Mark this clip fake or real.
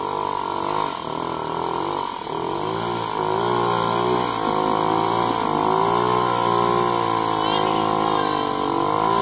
real